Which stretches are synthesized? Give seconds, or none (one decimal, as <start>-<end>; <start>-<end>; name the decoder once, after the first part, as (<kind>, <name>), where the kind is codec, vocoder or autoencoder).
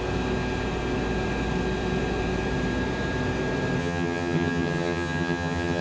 3.8-5.8 (vocoder, HiFi-GAN)